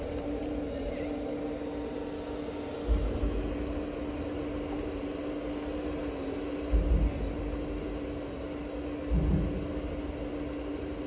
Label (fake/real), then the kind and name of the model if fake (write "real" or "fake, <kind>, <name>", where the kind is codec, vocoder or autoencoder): real